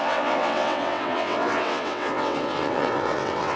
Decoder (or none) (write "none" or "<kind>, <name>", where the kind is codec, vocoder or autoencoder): vocoder, WaveNeXt